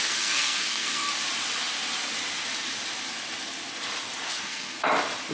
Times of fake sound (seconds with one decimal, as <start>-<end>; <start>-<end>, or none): 0.0-1.1; 4.3-4.8